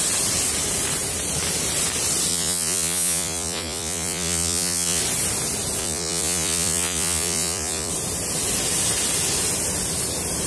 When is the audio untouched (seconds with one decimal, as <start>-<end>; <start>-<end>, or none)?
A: 0.0-2.3; 5.0-5.8; 7.9-10.5